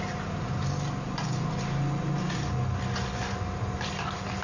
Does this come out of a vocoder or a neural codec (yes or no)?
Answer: no